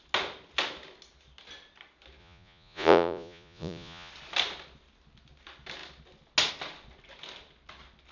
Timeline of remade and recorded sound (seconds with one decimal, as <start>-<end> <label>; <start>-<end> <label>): 0.0-2.2 recorded; 2.2-4.1 remade; 4.1-8.1 recorded